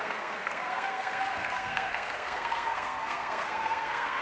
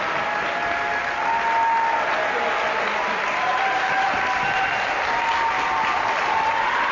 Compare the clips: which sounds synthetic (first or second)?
first